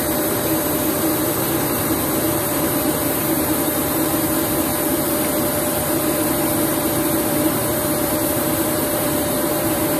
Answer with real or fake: fake